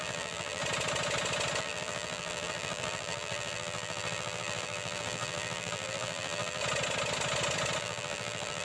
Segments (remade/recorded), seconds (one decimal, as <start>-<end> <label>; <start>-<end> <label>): 0.0-0.6 remade; 0.6-1.6 recorded; 1.6-6.6 remade; 6.6-7.8 recorded; 7.8-8.6 remade